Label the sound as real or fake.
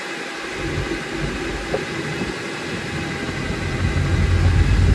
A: real